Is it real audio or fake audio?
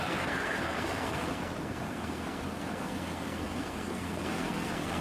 fake